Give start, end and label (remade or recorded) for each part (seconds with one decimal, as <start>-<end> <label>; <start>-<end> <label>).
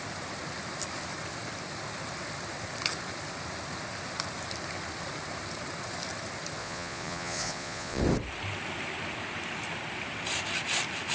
0.0-6.6 recorded; 6.6-8.0 remade; 8.0-11.1 recorded